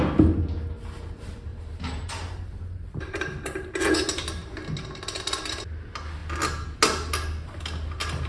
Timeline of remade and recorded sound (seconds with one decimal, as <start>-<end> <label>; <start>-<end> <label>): 0.0-1.5 recorded; 1.5-3.7 remade; 3.7-8.3 recorded